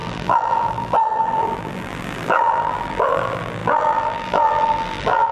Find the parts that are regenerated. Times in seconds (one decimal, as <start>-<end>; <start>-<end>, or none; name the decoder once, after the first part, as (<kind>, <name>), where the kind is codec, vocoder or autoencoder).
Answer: 0.0-5.3 (vocoder, BigVGAN v2)